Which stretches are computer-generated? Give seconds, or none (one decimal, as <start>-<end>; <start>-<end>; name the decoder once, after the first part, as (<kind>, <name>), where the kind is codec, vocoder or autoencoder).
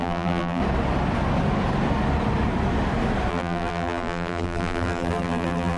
0.0-0.6 (vocoder, BigVGAN v2); 3.3-5.8